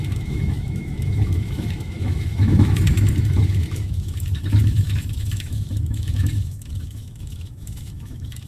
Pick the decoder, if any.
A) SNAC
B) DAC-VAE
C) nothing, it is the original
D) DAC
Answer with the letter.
B